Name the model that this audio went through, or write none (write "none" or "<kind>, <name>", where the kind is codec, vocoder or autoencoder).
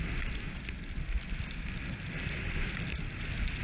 none